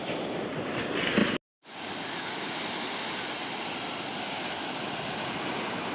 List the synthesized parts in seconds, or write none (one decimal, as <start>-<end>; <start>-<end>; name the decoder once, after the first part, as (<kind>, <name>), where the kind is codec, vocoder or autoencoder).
none